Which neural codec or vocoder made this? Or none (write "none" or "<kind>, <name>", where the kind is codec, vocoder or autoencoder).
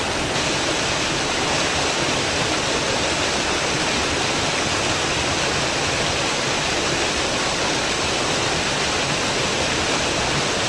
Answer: none